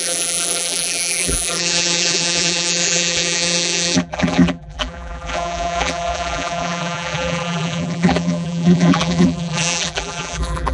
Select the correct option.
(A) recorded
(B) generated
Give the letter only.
B